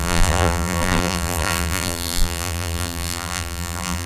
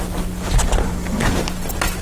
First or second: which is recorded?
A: second